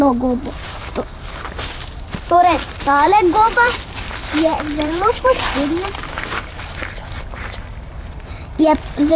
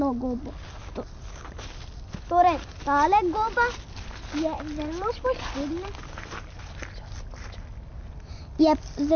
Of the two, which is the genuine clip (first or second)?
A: second